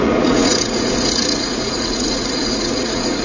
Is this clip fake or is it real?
fake